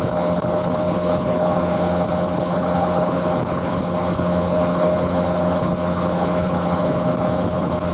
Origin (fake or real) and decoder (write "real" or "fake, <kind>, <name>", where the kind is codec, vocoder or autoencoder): fake, codec, HILCodec